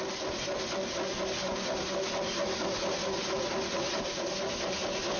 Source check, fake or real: real